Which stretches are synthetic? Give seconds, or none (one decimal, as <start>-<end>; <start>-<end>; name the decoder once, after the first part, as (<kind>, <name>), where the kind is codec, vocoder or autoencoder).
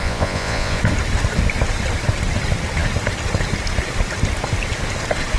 0.0-0.8 (vocoder, Vocos)